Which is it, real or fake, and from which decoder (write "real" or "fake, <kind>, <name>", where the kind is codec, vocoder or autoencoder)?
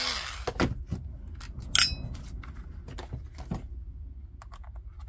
real